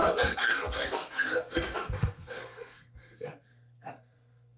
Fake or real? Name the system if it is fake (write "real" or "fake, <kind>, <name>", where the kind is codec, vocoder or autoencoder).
fake, codec, SNAC